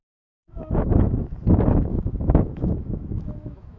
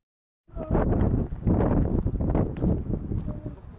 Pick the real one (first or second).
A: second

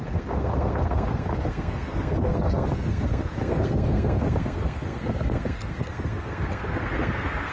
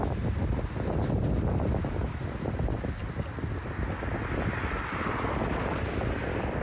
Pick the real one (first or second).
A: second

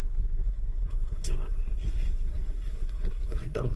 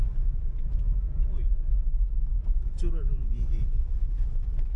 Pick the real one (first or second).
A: second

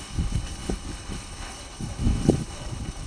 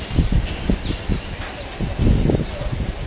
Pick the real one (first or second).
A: second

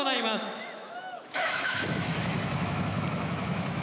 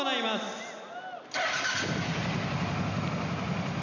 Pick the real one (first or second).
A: second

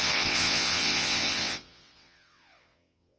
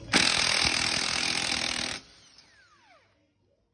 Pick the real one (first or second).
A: second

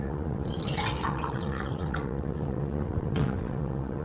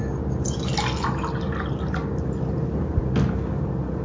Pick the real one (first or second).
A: second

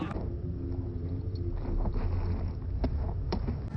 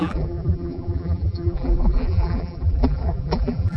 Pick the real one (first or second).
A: first